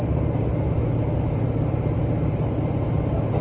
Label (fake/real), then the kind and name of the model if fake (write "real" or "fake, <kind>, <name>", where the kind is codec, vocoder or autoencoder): fake, vocoder, BigVGAN v2